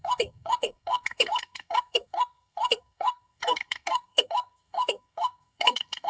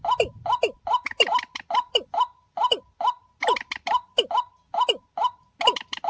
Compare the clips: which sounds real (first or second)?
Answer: second